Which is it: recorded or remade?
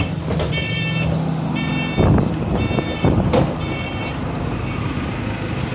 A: recorded